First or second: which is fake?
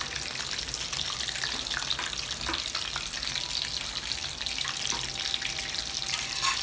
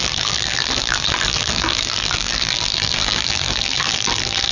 second